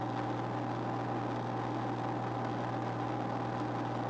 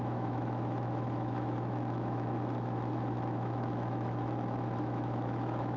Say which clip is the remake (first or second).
second